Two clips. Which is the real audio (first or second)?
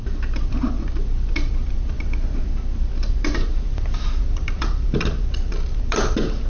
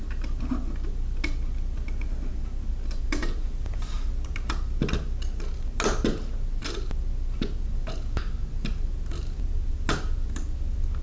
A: second